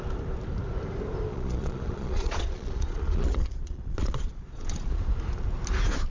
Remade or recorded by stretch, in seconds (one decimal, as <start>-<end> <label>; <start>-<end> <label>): 0.0-1.3 recorded; 1.3-5.0 remade; 5.0-6.1 recorded